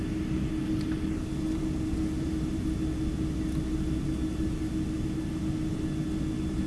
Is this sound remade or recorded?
recorded